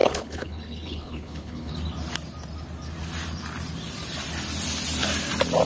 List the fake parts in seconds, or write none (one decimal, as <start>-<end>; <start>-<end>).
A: 0.0-1.7